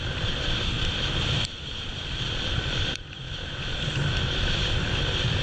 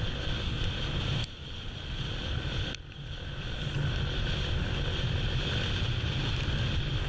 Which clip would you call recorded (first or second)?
second